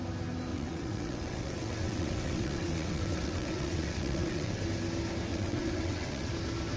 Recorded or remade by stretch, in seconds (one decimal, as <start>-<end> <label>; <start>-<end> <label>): 0.0-0.5 recorded; 0.5-4.6 remade; 4.6-5.3 recorded; 5.3-6.3 remade; 6.3-6.8 recorded